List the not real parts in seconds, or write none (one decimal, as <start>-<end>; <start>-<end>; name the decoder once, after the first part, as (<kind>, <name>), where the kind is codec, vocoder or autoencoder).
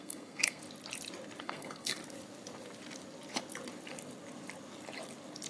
0.0-0.6 (codec, SNAC); 1.4-2.0